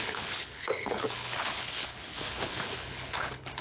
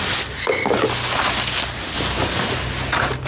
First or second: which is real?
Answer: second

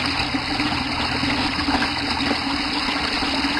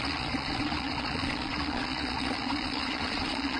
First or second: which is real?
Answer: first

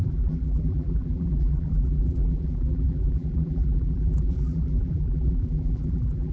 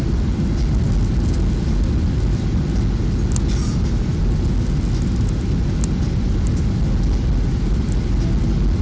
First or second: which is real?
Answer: second